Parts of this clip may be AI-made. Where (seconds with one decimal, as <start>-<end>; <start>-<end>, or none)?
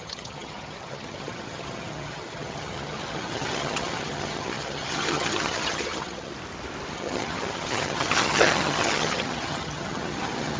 0.0-6.3; 6.9-10.6